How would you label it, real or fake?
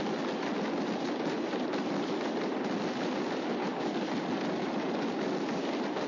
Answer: real